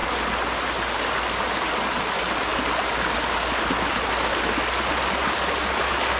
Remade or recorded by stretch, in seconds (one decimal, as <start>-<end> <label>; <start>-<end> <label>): 0.0-6.2 recorded